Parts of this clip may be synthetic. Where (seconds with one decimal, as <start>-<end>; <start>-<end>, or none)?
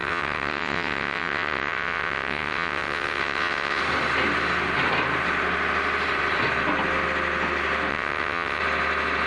0.0-3.8; 7.9-8.6